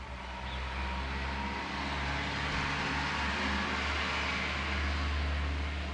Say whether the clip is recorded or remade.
recorded